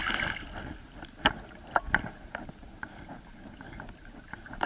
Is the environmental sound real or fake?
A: real